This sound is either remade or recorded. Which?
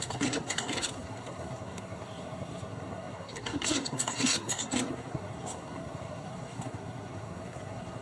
remade